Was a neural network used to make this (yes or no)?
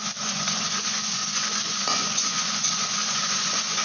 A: yes